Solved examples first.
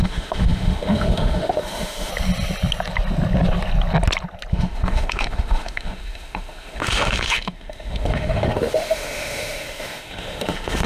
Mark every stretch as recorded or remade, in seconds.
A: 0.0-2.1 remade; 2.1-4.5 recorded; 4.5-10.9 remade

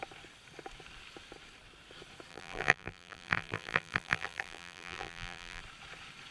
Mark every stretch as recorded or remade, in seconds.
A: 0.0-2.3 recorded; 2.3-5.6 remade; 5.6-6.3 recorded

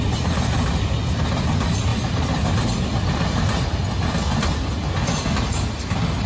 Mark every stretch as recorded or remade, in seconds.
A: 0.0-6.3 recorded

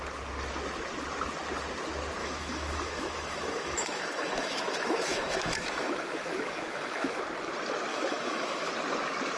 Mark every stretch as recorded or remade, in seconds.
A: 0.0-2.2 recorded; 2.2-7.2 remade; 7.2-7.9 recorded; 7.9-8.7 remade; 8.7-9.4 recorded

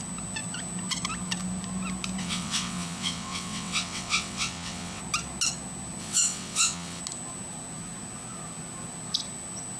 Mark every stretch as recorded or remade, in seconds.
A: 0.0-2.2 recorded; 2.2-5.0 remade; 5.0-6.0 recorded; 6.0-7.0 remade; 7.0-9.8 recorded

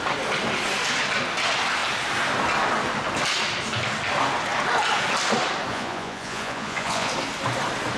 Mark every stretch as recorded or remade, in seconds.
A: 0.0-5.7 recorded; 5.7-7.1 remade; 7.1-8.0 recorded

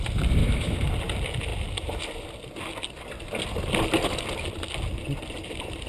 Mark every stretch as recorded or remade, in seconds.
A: 0.0-0.4 recorded; 0.4-0.9 remade; 0.9-5.9 recorded

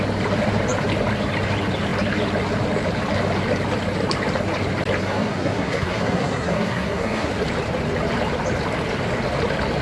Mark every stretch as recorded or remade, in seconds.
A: 0.0-5.0 recorded; 5.0-7.3 remade; 7.3-9.8 recorded